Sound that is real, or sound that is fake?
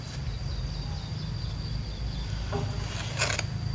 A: real